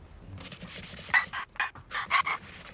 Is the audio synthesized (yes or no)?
no